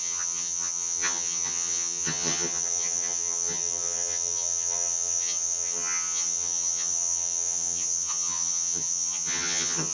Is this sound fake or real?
fake